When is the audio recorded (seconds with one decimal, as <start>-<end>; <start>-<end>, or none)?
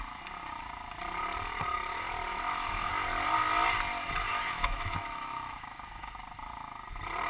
0.0-2.3; 2.9-4.3; 6.1-7.3